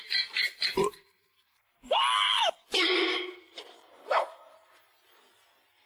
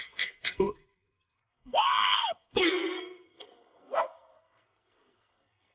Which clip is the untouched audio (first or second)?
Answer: first